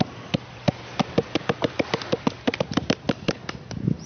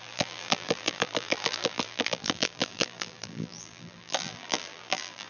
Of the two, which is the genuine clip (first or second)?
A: first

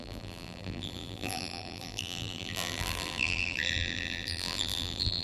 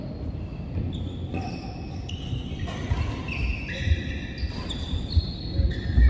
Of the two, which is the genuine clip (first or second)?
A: second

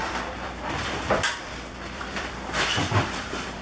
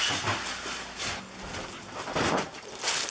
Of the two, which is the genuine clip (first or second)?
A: second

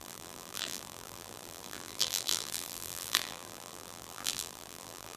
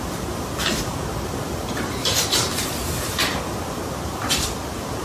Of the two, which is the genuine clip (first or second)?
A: second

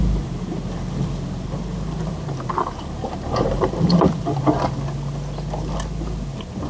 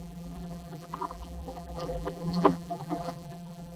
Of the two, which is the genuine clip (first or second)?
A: first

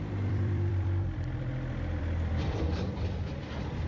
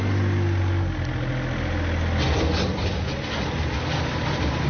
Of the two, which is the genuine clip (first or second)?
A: second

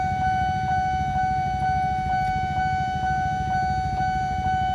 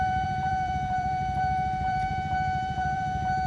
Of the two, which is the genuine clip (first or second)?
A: first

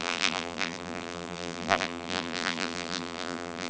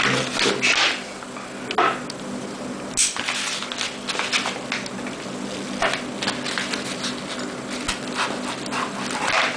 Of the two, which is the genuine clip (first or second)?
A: second